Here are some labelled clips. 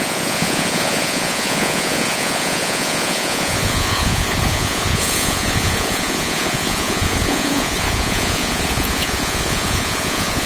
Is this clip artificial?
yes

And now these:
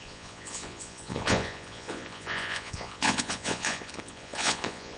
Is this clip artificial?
yes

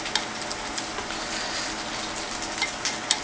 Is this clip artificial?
no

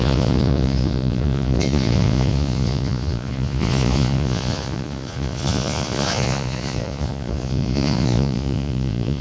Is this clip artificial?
yes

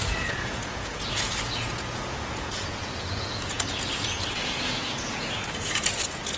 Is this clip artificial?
yes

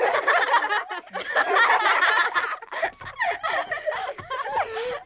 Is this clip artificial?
no